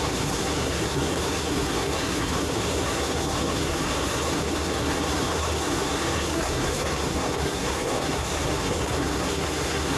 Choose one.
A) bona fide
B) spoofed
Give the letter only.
B